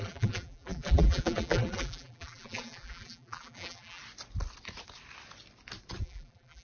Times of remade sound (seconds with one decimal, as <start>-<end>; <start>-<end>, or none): 0.0-4.0; 6.0-6.6